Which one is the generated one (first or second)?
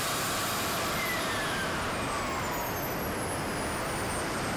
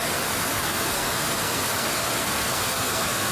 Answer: second